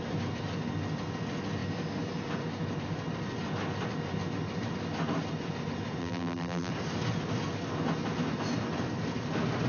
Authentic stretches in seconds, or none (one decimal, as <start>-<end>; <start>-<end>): 0.0-6.0; 6.7-9.7